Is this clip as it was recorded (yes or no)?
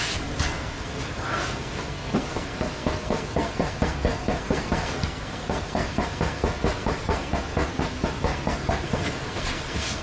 no